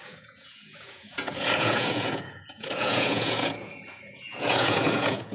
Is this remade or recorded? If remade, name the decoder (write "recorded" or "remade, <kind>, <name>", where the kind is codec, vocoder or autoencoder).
remade, vocoder, Vocos